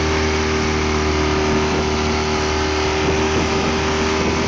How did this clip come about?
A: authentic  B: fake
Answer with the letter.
A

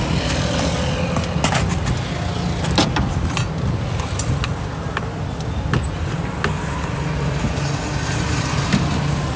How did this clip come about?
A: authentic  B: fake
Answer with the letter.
A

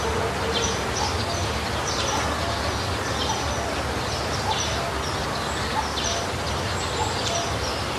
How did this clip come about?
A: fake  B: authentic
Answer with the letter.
B